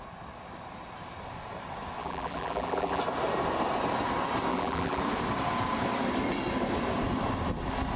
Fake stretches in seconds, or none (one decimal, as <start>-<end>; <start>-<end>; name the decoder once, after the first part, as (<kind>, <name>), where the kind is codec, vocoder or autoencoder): 2.0-3.0 (vocoder, BigVGAN v2); 4.5-5.0